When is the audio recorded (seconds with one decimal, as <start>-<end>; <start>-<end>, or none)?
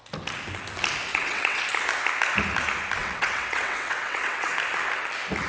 0.0-1.1; 1.6-3.0; 4.5-5.5